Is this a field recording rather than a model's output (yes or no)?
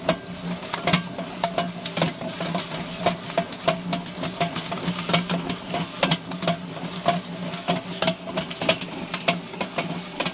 yes